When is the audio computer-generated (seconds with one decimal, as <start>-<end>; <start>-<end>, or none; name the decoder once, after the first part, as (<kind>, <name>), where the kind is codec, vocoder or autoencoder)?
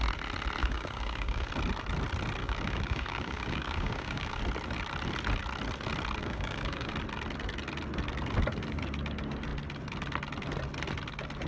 0.6-1.5 (codec, DAC); 2.4-4.4; 6.2-6.9